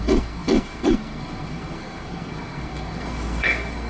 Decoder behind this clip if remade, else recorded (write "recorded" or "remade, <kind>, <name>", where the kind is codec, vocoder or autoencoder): remade, codec, SNAC